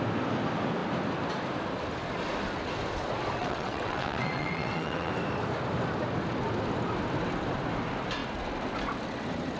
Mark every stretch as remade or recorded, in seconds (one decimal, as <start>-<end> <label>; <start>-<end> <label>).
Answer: 0.0-3.4 recorded; 3.4-5.1 remade; 5.1-9.6 recorded